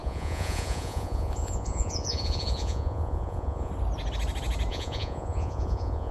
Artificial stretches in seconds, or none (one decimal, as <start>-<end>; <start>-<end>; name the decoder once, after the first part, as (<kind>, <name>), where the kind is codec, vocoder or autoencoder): 0.0-3.7 (vocoder, Vocos); 4.7-6.1